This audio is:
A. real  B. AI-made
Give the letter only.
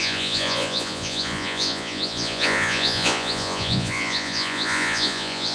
B